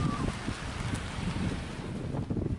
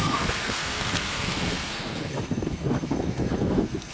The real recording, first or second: first